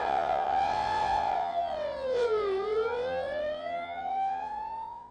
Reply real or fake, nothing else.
fake